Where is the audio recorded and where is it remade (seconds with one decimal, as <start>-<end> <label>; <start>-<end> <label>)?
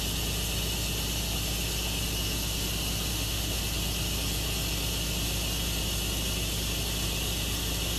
0.0-3.1 recorded; 3.1-3.6 remade; 3.6-8.0 recorded